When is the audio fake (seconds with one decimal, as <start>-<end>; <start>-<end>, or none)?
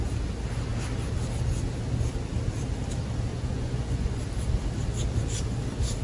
3.3-4.2